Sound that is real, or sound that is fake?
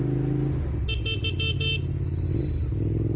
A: real